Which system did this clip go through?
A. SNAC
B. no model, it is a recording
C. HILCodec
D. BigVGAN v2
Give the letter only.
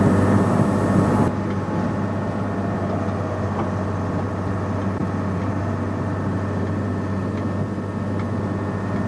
B